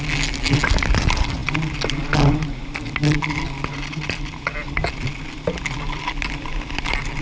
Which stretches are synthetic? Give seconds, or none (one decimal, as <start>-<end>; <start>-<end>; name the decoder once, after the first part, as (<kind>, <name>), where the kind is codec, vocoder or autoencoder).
none